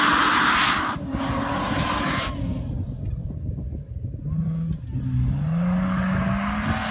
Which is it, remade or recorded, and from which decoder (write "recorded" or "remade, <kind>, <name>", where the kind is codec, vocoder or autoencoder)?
recorded